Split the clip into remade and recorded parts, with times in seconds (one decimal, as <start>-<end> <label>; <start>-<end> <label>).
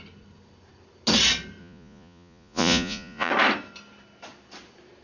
0.0-1.6 recorded; 1.6-3.3 remade; 3.3-5.0 recorded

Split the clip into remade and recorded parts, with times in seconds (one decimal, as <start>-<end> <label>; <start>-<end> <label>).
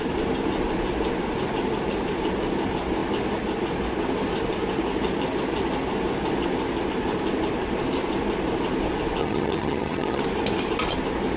0.0-9.2 recorded; 9.2-10.2 remade; 10.2-11.4 recorded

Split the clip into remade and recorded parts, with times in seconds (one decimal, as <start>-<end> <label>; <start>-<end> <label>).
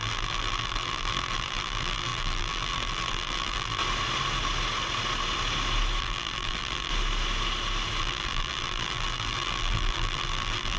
0.0-3.8 remade; 3.8-6.0 recorded; 6.0-6.9 remade; 6.9-8.0 recorded; 8.0-10.8 remade